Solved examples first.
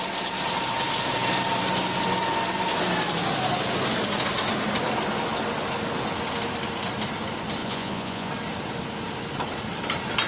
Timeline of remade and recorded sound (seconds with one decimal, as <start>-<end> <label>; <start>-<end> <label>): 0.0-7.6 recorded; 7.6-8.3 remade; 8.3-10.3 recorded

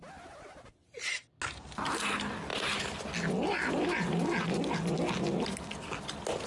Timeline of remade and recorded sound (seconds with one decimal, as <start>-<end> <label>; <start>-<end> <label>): 0.0-6.5 recorded

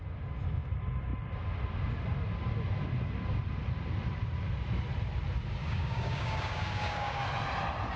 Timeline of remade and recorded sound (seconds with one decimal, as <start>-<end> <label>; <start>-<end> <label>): 0.0-5.6 recorded; 5.6-7.2 remade; 7.2-8.0 recorded

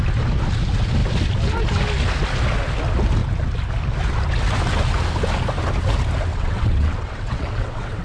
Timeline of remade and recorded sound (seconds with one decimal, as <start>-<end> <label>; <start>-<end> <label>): 0.0-6.3 recorded; 6.3-8.0 remade

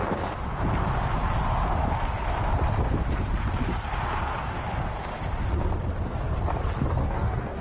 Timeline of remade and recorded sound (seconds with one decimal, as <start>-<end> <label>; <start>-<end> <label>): 0.0-7.0 recorded; 7.0-7.6 remade

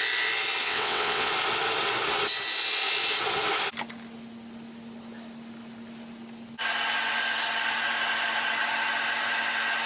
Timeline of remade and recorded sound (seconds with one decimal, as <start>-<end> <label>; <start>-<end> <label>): 0.0-0.6 recorded; 0.6-1.3 remade; 1.3-9.9 recorded